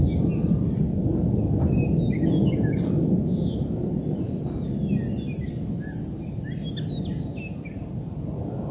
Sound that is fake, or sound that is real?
real